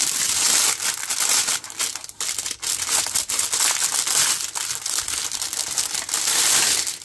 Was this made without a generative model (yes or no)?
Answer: yes